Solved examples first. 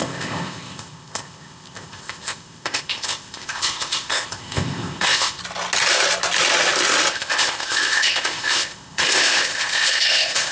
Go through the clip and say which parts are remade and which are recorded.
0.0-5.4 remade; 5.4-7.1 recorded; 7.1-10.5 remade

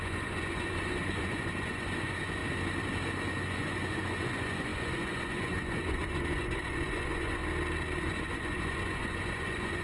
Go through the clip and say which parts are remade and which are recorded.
0.0-2.4 remade; 2.4-3.3 recorded; 3.3-7.4 remade; 7.4-8.0 recorded; 8.0-9.8 remade

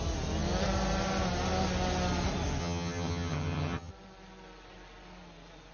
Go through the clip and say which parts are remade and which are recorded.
0.0-2.6 recorded; 2.6-3.9 remade; 3.9-5.7 recorded

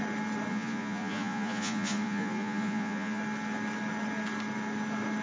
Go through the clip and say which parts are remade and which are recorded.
0.0-0.5 recorded; 0.5-3.2 remade; 3.2-5.2 recorded